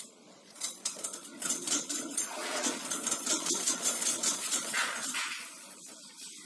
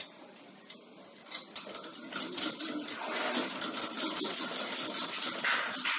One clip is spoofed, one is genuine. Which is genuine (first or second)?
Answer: second